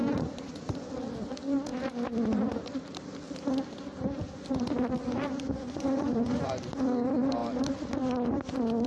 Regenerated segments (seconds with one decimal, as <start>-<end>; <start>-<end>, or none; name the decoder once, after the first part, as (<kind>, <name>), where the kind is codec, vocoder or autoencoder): 0.0-0.9 (vocoder, Vocos); 5.5-6.5